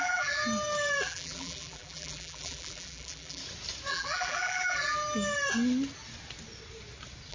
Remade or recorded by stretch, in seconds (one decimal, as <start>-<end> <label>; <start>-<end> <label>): 0.0-0.4 remade; 0.4-1.0 recorded; 1.0-3.4 remade; 3.4-3.9 recorded; 3.9-5.0 remade; 5.0-7.3 recorded